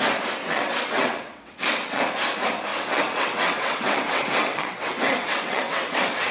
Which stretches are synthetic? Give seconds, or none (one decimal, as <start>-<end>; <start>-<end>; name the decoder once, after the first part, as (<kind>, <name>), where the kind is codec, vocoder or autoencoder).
0.4-2.0 (vocoder, WaveNeXt); 2.7-6.3